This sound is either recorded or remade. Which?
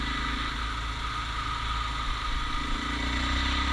recorded